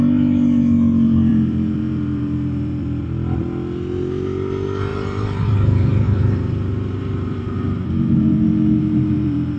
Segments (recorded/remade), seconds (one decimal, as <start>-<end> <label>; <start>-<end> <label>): 0.0-1.3 recorded; 1.3-2.8 remade; 2.8-4.9 recorded; 4.9-9.6 remade